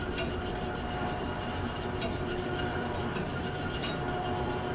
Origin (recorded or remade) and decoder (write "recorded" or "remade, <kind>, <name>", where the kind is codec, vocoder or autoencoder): remade, vocoder, BigVGAN v2